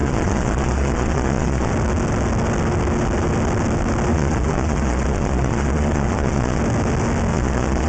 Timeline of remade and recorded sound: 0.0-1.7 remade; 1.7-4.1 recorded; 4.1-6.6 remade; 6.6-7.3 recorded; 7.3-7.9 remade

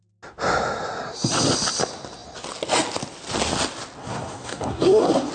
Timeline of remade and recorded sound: 0.0-4.0 recorded; 4.0-5.3 remade

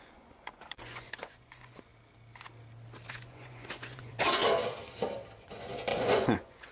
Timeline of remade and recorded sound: 0.0-1.9 remade; 1.9-3.1 recorded; 3.1-4.4 remade; 4.4-5.4 recorded; 5.4-6.7 remade

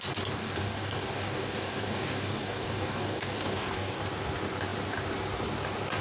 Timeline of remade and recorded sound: 0.0-0.4 recorded; 0.4-4.0 remade; 4.0-6.0 recorded

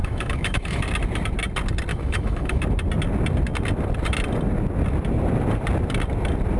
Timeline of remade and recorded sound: 0.0-0.8 remade; 0.8-1.9 recorded; 1.9-2.6 remade; 2.6-6.6 recorded